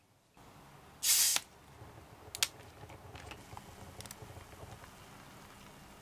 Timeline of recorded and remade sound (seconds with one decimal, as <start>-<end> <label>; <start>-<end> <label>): 0.0-6.0 recorded